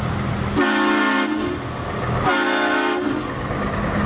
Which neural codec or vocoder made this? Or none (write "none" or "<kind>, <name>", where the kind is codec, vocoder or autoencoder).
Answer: none